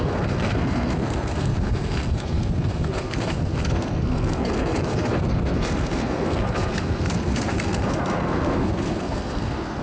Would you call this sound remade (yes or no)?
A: yes